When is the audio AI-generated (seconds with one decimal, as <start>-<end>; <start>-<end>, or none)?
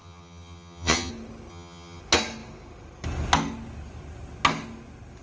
0.0-1.1; 1.5-2.0